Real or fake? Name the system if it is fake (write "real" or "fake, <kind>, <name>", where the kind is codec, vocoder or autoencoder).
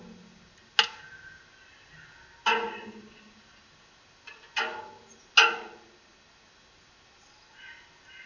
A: real